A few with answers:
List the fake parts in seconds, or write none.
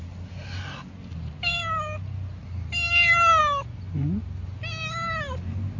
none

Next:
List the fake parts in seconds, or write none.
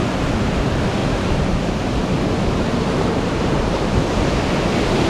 1.0-1.9; 2.7-4.4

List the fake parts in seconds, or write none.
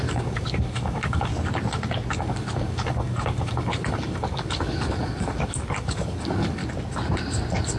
0.0-1.3; 2.1-6.6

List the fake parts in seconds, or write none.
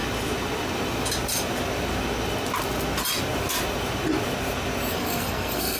4.9-5.8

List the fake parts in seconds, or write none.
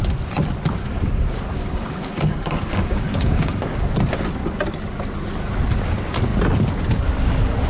0.8-3.9